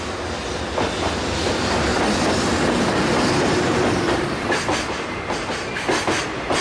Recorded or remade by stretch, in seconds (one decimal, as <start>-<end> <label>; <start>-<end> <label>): 0.0-1.9 recorded; 1.9-5.2 remade; 5.2-6.6 recorded